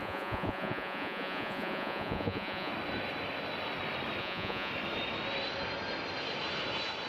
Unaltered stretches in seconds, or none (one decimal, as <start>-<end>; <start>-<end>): 2.7-4.2; 4.7-7.1